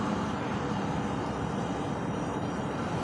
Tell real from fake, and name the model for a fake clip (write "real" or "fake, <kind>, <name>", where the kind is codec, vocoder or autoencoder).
fake, vocoder, BigVGAN v2